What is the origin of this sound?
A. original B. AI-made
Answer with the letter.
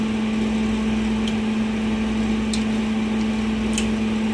A